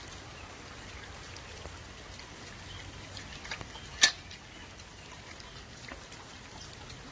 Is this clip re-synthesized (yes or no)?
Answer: no